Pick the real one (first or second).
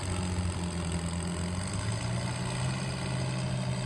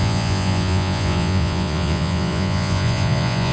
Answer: first